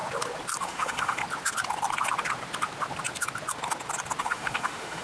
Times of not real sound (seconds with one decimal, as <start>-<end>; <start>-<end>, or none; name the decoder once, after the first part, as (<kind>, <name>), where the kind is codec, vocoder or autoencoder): 0.6-1.2 (autoencoder, DAC-VAE); 4.2-5.0